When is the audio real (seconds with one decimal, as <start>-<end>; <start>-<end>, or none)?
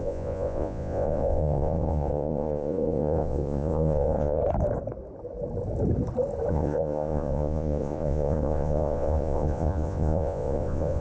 4.4-6.5